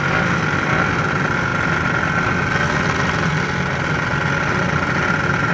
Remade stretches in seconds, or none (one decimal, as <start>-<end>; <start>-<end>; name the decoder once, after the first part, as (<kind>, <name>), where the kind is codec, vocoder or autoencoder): none